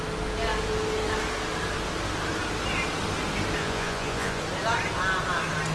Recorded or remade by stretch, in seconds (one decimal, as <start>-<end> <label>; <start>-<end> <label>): 0.0-3.6 recorded; 3.6-4.4 remade; 4.4-5.7 recorded